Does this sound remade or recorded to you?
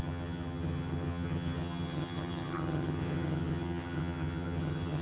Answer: remade